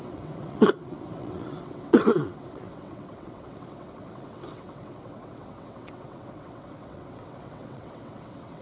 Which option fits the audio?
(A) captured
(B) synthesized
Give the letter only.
B